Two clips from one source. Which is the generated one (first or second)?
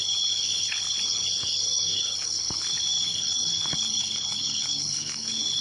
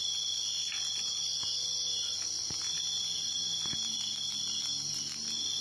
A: first